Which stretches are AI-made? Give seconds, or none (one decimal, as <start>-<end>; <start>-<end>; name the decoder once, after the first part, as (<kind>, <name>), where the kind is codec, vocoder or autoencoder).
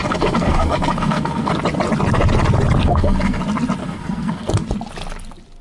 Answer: 0.0-1.5 (codec, SNAC); 2.8-3.4; 3.8-4.5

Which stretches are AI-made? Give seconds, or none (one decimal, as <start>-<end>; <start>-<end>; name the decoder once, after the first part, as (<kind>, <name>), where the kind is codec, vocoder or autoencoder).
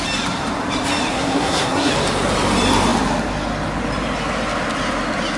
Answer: 1.1-1.9 (codec, SNAC)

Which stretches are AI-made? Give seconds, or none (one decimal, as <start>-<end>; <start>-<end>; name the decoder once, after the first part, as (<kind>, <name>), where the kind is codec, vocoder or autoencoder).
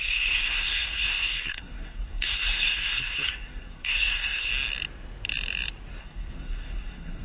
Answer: 0.0-4.5 (codec, SNAC); 6.0-7.2